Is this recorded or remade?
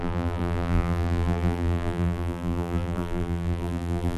remade